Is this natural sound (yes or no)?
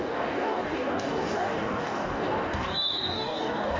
no